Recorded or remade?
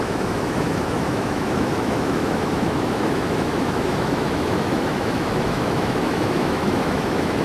remade